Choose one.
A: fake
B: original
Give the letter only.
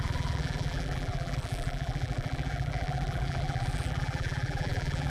A